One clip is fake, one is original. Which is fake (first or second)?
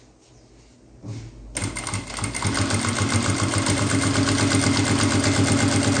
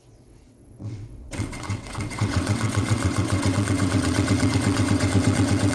second